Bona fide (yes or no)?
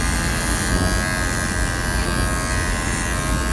yes